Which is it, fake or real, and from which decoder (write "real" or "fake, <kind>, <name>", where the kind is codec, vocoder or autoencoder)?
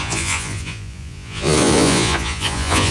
fake, vocoder, Vocos